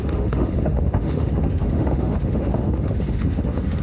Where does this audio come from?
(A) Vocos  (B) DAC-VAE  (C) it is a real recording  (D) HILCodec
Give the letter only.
B